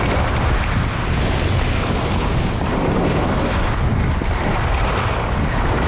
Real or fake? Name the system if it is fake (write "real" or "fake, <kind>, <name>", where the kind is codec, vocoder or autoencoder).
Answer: real